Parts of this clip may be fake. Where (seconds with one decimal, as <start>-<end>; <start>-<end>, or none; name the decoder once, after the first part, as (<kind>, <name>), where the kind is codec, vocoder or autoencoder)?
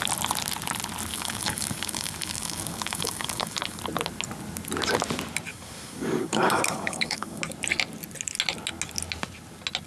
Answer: 1.1-3.8 (codec, DAC); 5.5-7.4